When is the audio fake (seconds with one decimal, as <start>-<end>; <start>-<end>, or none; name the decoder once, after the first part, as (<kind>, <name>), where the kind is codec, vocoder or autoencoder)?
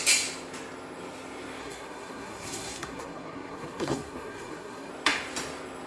1.6-4.9 (codec, SNAC)